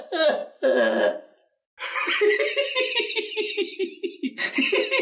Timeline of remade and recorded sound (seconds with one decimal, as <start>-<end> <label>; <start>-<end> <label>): 0.0-5.0 recorded